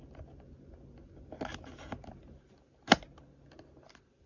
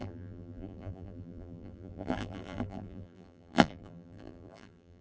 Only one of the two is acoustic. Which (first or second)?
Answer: first